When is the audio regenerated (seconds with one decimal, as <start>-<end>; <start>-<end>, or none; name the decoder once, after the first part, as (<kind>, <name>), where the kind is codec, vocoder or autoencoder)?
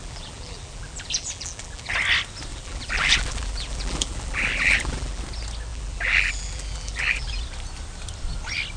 0.0-1.9 (vocoder, BigVGAN v2); 2.5-5.2; 5.7-7.4